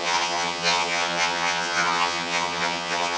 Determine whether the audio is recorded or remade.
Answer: remade